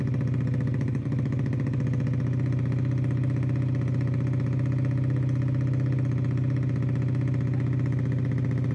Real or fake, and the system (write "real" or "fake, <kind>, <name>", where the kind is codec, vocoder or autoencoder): real